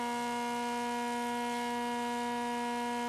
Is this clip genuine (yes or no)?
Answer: yes